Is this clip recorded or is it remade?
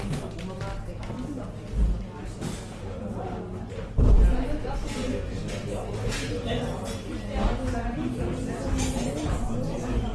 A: recorded